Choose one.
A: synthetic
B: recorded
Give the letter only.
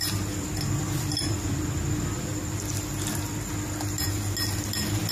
B